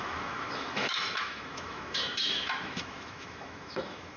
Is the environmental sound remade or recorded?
remade